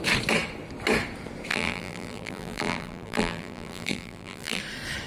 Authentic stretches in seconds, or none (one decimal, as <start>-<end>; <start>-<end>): 0.0-1.5; 4.6-5.1